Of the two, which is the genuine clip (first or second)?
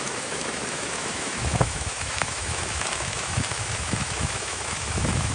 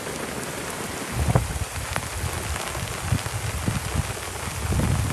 second